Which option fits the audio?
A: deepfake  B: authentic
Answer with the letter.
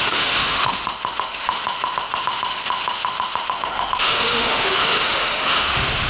A